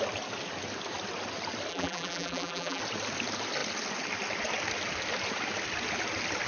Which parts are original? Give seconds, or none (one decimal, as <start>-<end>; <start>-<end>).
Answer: 0.0-1.7; 2.8-6.5